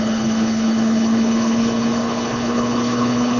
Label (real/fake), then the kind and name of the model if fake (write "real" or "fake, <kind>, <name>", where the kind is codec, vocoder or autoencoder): fake, codec, HILCodec